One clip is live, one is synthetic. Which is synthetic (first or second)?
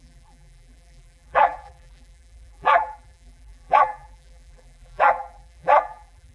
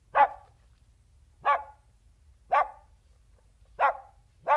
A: first